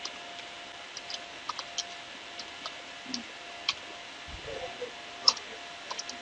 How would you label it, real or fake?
real